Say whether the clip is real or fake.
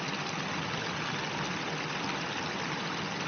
real